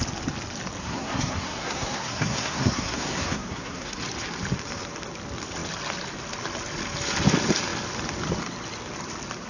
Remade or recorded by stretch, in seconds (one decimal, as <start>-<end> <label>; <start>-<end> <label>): 0.0-0.8 recorded; 0.8-4.0 remade; 4.0-9.5 recorded